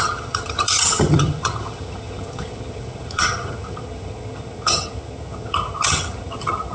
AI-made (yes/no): yes